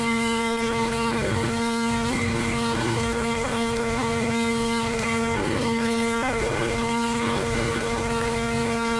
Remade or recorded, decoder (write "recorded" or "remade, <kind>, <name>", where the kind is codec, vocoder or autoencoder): remade, codec, SNAC